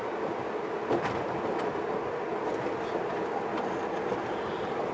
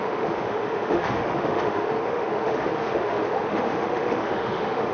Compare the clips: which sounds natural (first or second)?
first